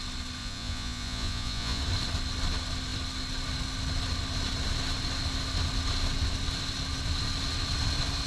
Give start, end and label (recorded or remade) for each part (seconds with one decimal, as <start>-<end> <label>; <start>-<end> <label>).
0.0-0.4 recorded; 0.4-1.8 remade; 1.8-8.3 recorded